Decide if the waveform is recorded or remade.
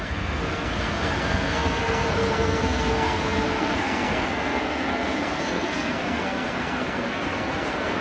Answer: remade